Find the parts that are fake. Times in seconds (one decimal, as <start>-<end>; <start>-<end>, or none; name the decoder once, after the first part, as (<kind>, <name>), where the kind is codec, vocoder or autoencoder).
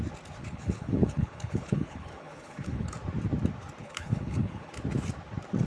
0.4-2.9 (codec, HILCodec); 3.8-4.7